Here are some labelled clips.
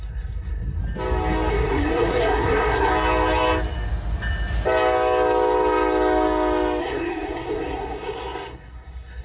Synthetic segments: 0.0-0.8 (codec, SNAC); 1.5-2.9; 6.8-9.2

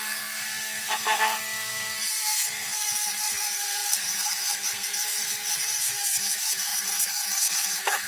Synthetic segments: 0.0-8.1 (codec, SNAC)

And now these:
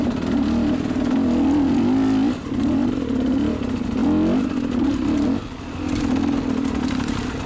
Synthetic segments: none